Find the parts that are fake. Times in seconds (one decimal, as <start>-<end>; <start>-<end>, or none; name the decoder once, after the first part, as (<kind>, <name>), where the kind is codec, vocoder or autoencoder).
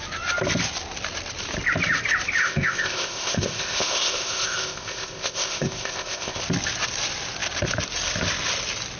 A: 2.4-6.4 (codec, ZipCodec)